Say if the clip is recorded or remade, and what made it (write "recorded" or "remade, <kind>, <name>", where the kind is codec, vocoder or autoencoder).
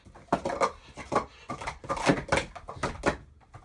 recorded